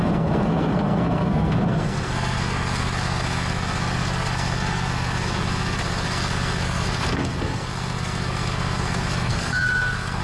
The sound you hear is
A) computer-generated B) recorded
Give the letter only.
A